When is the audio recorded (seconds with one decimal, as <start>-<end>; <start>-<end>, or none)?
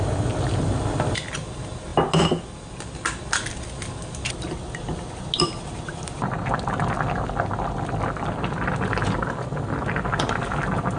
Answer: 0.0-11.0